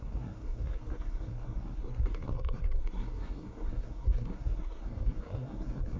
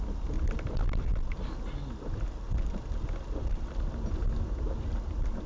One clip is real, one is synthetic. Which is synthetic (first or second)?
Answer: first